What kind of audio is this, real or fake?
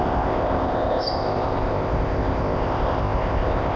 fake